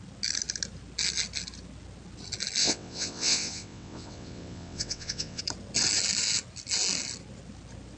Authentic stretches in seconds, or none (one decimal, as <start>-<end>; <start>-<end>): 0.0-2.6; 5.4-8.0